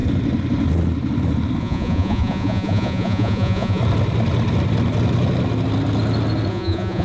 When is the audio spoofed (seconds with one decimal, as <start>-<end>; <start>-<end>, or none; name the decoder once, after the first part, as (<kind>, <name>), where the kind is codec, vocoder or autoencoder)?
1.6-3.8 (vocoder, Vocos); 6.5-7.0